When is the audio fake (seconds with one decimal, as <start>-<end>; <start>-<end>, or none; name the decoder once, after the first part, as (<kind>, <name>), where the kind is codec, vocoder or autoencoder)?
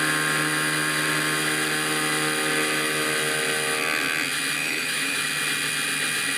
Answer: 4.6-5.2 (autoencoder, DAC-VAE)